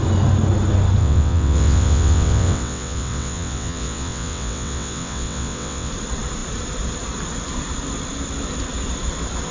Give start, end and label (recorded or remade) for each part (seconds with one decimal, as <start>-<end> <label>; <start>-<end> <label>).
0.0-1.0 recorded; 1.0-5.9 remade; 5.9-9.5 recorded